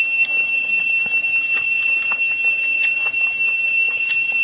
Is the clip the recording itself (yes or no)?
yes